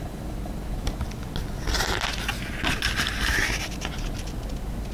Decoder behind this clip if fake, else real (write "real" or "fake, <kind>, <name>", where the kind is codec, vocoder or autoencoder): real